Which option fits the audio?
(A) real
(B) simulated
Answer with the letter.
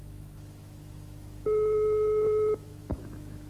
B